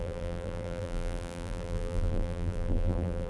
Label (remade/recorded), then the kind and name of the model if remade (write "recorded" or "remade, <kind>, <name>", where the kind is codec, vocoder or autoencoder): remade, vocoder, BigVGAN v2